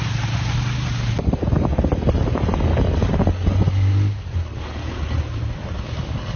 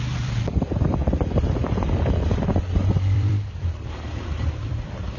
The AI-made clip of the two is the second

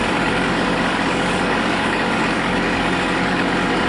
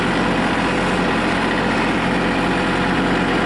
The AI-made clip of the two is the first